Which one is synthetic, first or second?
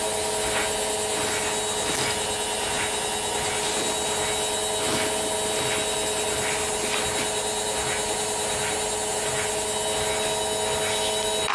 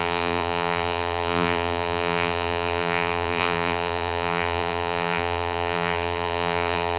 second